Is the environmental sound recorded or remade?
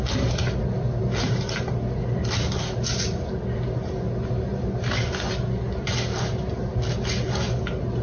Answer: recorded